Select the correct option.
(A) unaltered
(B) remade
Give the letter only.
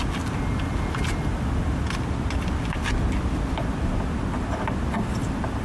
A